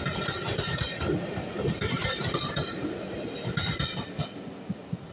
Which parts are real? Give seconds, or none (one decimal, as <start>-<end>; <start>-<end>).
0.0-5.1